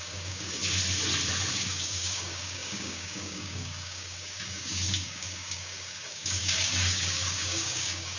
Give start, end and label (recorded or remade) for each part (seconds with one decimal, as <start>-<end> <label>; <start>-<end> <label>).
0.0-0.6 remade; 0.6-1.5 recorded; 1.5-8.2 remade